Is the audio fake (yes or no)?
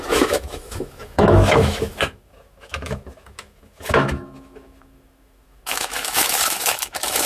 yes